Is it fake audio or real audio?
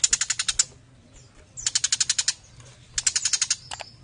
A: real